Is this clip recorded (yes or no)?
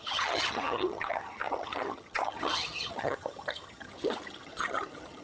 no